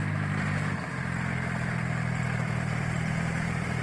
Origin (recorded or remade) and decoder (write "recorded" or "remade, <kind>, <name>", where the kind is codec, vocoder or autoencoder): remade, vocoder, BigVGAN v2